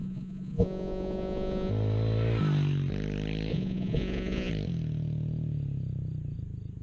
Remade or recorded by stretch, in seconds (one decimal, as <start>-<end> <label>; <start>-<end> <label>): 0.0-1.7 remade; 1.7-3.5 recorded; 3.5-4.5 remade; 4.5-6.8 recorded